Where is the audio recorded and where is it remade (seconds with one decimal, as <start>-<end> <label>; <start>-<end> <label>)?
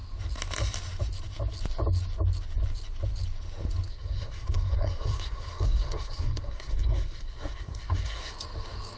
0.0-3.9 recorded; 3.9-8.3 remade; 8.3-9.0 recorded